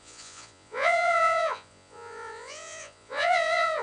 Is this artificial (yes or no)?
yes